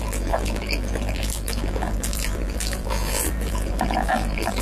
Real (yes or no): no